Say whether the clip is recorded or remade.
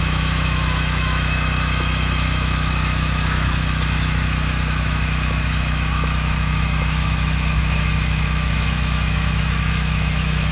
remade